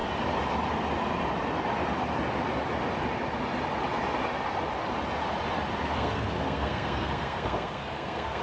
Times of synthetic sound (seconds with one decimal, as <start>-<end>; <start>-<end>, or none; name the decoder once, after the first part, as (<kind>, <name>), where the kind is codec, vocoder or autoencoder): 5.8-8.4 (codec, SNAC)

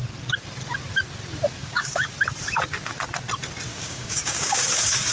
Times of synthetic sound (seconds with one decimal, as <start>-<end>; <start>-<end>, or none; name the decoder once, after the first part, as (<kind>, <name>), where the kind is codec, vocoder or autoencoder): 1.6-2.1 (codec, DAC); 3.7-5.1

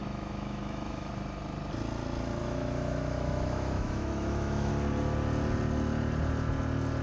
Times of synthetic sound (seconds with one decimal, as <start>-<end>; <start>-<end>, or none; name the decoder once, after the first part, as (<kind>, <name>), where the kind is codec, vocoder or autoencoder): 0.0-1.1 (autoencoder, DAC-VAE); 2.4-4.7

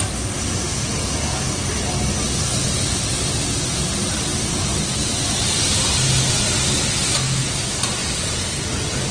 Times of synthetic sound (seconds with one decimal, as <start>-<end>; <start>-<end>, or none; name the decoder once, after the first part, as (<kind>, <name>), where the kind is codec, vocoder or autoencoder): 0.7-1.4 (vocoder, Vocos); 8.0-8.6

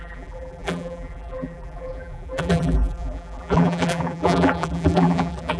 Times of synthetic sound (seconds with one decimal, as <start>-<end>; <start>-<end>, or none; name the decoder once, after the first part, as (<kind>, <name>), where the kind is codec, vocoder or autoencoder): 0.0-5.6 (vocoder, BigVGAN v2)

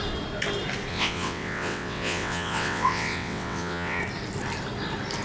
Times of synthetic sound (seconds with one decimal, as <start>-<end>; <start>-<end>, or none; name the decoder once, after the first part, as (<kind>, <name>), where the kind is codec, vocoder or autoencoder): 0.9-4.0 (vocoder, WaveNeXt)

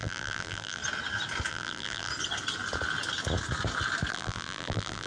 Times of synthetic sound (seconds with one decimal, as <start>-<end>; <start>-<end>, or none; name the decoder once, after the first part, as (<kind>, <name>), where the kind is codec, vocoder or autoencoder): 0.0-0.8 (vocoder, BigVGAN v2); 1.5-2.1; 4.1-5.1

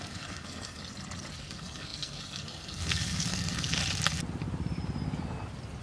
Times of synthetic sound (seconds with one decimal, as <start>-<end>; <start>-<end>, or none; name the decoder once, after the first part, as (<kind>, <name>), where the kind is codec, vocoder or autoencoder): 0.0-0.8 (codec, SNAC); 1.4-3.8